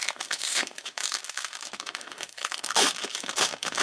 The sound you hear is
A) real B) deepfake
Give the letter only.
B